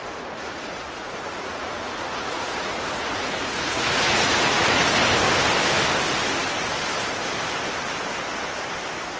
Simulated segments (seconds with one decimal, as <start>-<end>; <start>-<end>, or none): 0.0-4.8